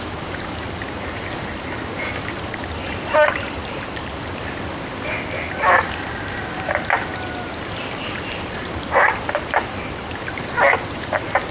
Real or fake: fake